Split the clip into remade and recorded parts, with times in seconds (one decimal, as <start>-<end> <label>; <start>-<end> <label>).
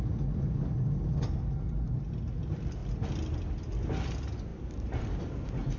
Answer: 0.0-4.5 recorded; 4.5-5.2 remade; 5.2-5.8 recorded